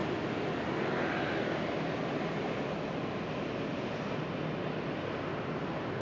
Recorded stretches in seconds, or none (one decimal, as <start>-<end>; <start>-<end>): 0.0-6.0